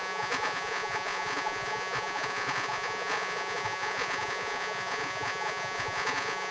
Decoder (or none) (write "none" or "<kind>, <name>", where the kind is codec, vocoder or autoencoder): vocoder, Vocos